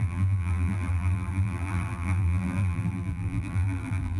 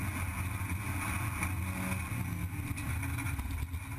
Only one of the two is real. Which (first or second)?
second